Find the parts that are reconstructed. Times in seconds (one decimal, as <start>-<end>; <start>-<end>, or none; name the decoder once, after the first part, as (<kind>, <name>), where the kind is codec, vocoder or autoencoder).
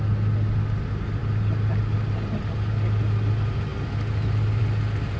none